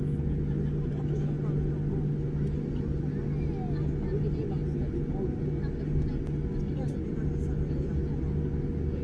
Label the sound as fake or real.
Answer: real